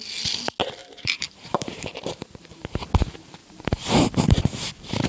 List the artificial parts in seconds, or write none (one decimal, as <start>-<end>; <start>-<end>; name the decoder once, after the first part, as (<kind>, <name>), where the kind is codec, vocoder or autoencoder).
0.8-2.8 (vocoder, BigVGAN v2); 3.4-4.4